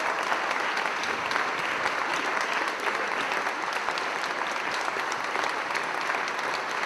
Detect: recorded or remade recorded